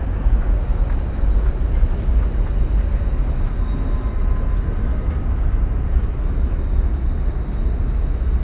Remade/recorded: recorded